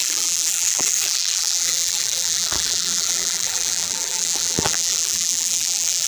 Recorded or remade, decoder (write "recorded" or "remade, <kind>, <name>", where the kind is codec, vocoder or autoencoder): remade, vocoder, BigVGAN v2